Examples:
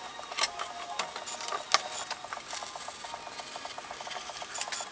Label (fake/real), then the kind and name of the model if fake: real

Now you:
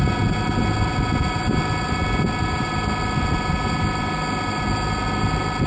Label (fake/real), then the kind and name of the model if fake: real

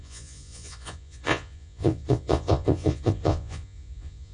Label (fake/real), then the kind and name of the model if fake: fake, vocoder, Vocos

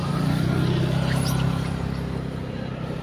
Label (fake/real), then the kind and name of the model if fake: real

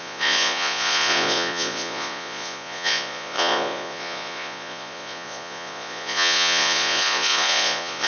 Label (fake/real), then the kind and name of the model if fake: fake, vocoder, Vocos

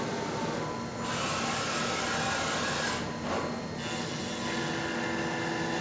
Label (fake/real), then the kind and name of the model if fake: real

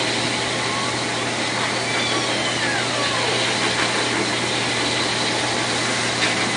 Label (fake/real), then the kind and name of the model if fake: real